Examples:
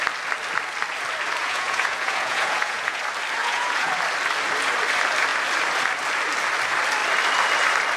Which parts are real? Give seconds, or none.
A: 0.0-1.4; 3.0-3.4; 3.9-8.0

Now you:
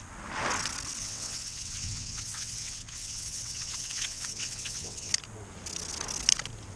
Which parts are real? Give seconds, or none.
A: 0.0-1.0; 5.1-6.8

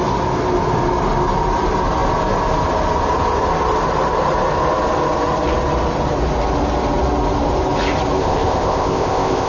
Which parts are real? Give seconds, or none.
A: 0.0-8.2

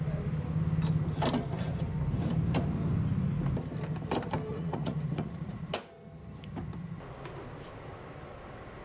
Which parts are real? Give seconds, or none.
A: 0.0-4.5; 5.7-8.8